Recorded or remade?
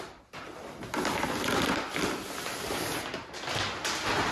recorded